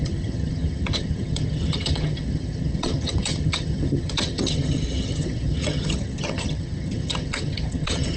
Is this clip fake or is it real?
fake